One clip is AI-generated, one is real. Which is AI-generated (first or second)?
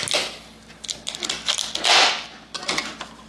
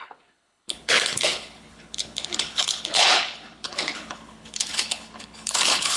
second